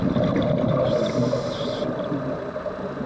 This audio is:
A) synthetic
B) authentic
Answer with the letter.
B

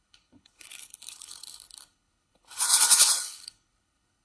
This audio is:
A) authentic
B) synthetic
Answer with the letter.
B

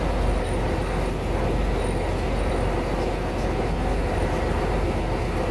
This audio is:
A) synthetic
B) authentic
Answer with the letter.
B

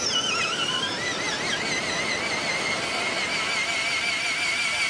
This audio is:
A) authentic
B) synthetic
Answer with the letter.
A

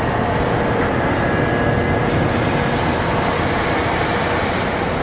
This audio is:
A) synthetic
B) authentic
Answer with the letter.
B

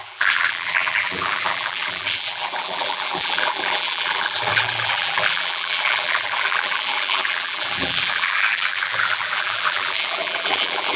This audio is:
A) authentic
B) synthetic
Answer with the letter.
B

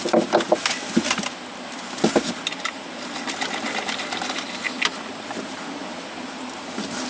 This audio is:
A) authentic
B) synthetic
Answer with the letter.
A